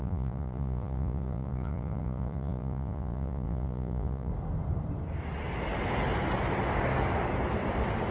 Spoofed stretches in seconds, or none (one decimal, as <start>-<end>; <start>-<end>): 0.0-4.3